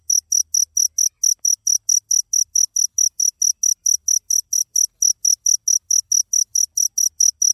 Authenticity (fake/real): real